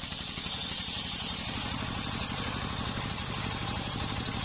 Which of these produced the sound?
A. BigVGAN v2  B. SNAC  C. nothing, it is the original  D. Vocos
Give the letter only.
C